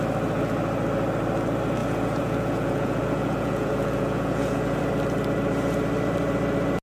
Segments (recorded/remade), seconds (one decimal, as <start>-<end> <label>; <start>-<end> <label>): 0.0-1.8 recorded; 1.8-4.8 remade; 4.8-6.8 recorded